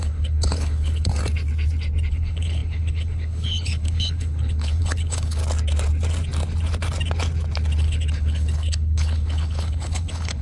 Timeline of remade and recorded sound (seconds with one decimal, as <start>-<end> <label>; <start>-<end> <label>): 0.0-1.1 remade; 1.1-2.1 recorded; 2.1-5.4 remade; 5.4-7.8 recorded; 7.8-10.4 remade